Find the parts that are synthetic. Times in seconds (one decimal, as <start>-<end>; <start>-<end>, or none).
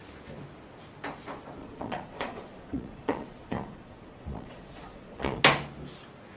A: 1.6-5.4